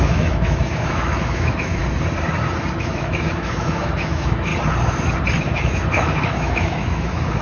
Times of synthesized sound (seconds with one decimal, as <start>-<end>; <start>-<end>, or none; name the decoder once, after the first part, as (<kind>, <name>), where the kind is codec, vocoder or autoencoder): 0.0-1.8 (autoencoder, DAC-VAE); 2.8-4.5; 5.4-7.4